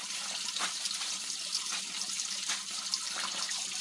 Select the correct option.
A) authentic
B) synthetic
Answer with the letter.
B